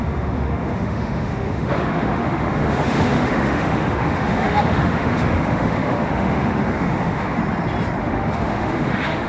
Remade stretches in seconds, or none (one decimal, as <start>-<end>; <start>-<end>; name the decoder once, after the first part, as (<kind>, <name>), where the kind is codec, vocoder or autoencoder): 0.0-7.4 (autoencoder, DAC-VAE); 8.0-9.3